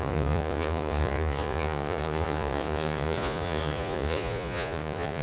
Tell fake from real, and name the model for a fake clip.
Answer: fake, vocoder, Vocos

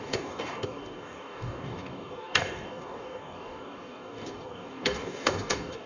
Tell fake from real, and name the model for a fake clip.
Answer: fake, codec, DAC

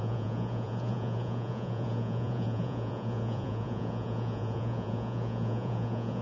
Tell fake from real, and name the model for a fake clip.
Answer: fake, vocoder, Vocos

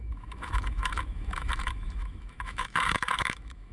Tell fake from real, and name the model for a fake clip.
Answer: fake, autoencoder, DAC-VAE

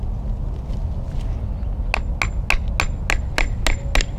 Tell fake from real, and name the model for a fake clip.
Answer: real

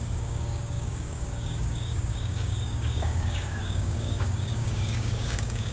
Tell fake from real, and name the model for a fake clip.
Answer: fake, codec, DAC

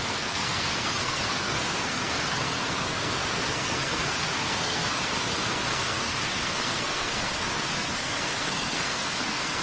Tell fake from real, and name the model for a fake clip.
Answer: fake, codec, SNAC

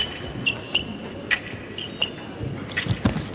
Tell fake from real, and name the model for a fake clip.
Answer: real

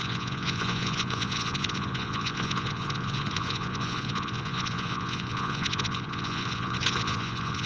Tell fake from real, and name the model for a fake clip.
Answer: fake, vocoder, Vocos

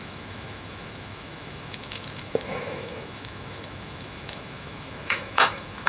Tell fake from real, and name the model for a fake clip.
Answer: fake, autoencoder, DAC-VAE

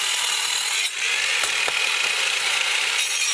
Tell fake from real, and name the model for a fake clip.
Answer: real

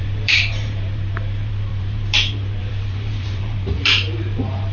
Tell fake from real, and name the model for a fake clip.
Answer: fake, vocoder, BigVGAN v2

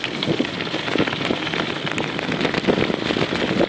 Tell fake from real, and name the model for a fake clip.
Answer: real